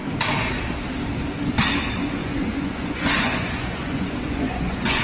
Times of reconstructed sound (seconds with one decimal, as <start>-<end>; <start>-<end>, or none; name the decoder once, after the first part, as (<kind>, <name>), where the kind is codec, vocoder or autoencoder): 2.2-5.0 (vocoder, Vocos)